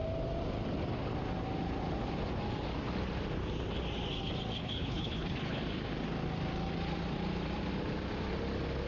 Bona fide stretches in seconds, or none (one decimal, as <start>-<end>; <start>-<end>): 0.0-4.6; 5.6-8.9